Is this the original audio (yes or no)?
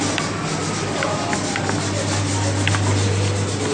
yes